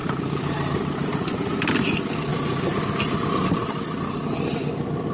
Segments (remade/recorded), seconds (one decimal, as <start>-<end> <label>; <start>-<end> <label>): 0.0-1.6 remade; 1.6-2.3 recorded; 2.3-2.8 remade; 2.8-5.1 recorded